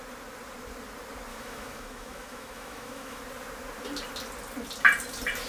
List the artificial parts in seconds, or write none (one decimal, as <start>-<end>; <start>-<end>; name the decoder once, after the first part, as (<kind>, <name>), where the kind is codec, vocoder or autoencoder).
1.3-3.2 (autoencoder, DAC-VAE)